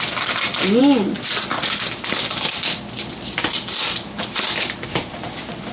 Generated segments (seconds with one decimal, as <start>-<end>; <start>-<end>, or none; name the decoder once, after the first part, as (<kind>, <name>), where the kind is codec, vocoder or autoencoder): none